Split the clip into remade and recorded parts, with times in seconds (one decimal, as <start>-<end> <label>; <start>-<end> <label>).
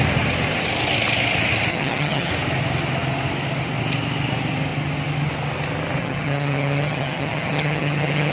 0.0-1.7 recorded; 1.7-2.3 remade; 2.3-6.0 recorded; 6.0-8.3 remade